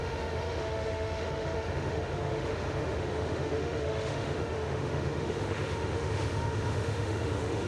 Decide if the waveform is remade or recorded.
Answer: remade